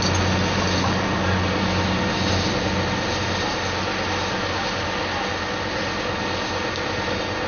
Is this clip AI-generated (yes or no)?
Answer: no